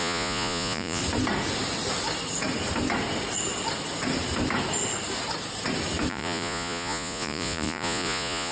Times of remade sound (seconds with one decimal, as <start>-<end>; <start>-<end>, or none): 0.0-1.0; 6.1-8.5